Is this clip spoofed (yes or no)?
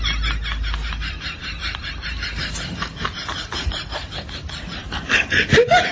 yes